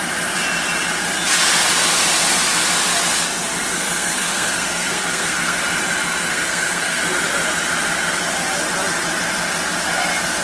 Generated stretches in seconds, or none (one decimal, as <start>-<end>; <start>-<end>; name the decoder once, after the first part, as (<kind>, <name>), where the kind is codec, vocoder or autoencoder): 3.7-5.6 (codec, SNAC); 6.3-7.0